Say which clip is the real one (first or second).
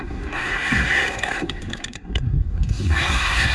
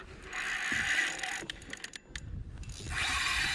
second